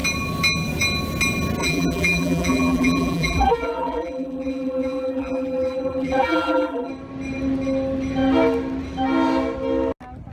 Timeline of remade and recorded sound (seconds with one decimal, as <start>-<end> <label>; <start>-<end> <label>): 0.0-1.6 recorded; 1.6-6.9 remade; 6.9-10.3 recorded